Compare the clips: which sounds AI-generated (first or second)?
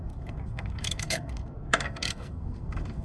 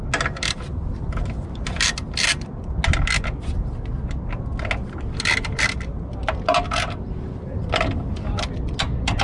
first